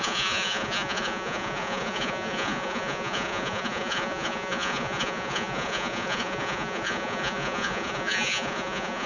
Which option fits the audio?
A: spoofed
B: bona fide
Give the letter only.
A